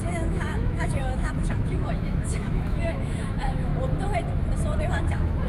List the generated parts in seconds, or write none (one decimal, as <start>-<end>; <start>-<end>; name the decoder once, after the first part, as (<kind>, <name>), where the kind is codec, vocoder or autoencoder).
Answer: 0.0-3.7 (autoencoder, DAC-VAE); 4.8-5.5